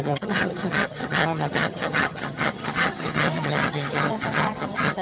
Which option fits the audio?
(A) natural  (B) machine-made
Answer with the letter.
B